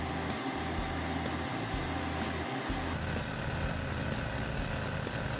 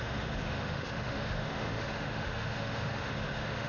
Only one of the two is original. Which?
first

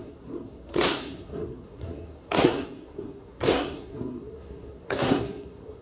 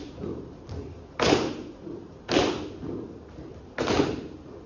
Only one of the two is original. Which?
second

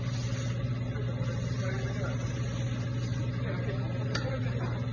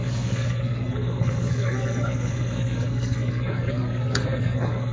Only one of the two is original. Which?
first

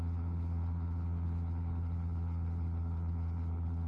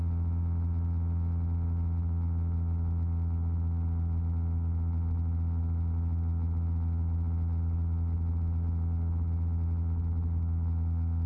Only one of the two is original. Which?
second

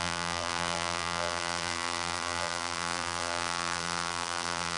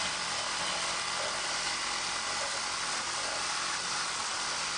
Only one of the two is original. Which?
second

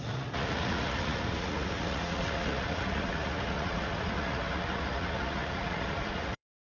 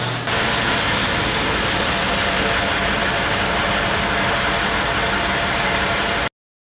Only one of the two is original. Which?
second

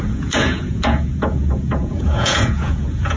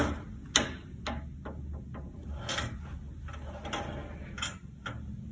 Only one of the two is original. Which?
second